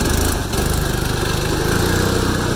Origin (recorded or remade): recorded